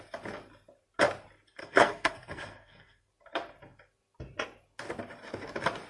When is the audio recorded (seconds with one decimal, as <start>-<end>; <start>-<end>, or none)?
0.0-1.6; 3.1-5.9